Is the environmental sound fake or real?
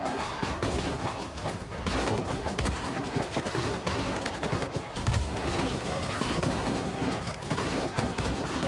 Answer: fake